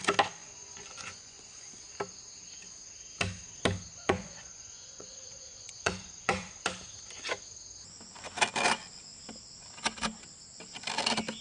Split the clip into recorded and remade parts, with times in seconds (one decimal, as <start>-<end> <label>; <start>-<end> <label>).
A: 0.0-0.4 recorded; 0.4-1.7 remade; 1.7-3.9 recorded; 3.9-6.5 remade; 6.5-11.4 recorded